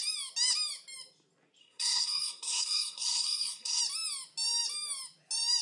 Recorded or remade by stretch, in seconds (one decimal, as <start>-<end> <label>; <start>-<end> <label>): 0.0-1.6 recorded; 1.6-3.8 remade; 3.8-5.6 recorded

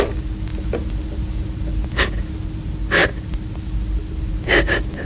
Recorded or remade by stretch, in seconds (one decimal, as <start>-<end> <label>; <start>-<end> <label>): 0.0-0.5 recorded; 0.5-2.0 remade; 2.0-3.0 recorded; 3.0-4.2 remade; 4.2-5.0 recorded

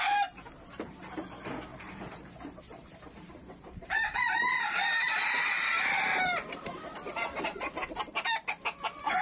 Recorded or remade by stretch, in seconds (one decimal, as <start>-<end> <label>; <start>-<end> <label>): 0.0-1.7 recorded; 1.7-5.2 remade; 5.2-9.2 recorded